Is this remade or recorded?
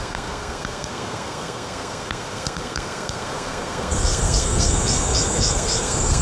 remade